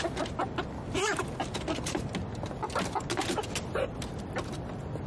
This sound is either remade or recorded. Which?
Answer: recorded